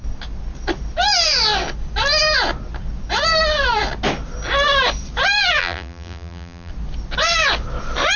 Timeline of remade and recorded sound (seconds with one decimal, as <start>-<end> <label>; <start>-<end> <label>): 0.0-5.6 recorded; 5.6-6.7 remade; 6.7-8.2 recorded